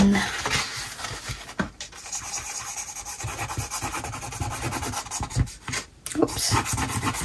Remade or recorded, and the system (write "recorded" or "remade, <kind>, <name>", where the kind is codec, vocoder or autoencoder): recorded